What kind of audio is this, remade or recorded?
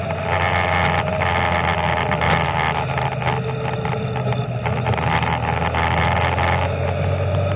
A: recorded